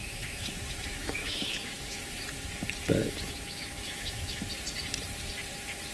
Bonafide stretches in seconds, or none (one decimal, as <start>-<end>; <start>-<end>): 2.0-3.0; 4.4-5.9